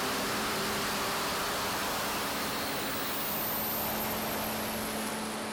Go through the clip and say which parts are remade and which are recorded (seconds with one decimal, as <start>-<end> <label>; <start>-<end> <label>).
0.0-5.5 recorded